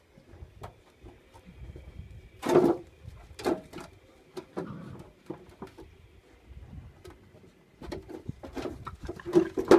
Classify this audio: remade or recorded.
recorded